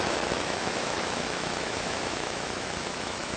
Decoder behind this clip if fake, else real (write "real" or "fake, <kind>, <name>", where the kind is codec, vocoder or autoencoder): fake, autoencoder, DAC-VAE